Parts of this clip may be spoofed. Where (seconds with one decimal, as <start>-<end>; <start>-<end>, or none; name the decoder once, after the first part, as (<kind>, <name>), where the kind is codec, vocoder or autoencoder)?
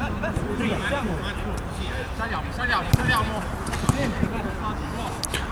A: 0.0-5.5 (vocoder, BigVGAN v2)